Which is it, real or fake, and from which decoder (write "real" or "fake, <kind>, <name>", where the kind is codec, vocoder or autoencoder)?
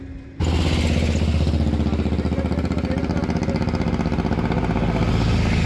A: real